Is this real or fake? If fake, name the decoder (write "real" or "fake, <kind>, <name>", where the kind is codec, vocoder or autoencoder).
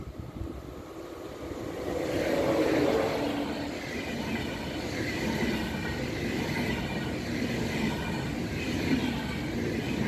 real